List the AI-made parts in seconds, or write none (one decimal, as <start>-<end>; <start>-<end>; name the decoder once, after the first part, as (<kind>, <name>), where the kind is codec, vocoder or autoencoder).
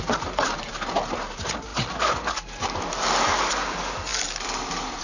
none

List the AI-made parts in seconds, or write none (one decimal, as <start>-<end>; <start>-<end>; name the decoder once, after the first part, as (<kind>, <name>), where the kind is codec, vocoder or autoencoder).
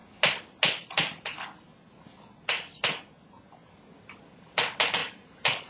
5.0-5.7 (vocoder, BigVGAN v2)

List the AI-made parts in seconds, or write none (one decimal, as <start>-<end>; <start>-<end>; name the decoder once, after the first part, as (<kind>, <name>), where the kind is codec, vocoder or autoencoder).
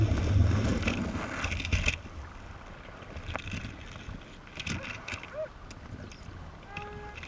none